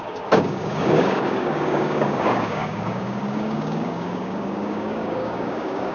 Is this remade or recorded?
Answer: remade